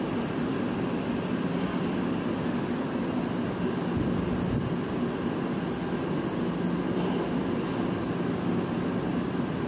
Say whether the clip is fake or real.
real